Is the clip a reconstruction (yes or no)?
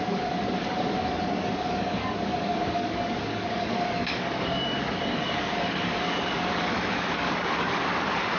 yes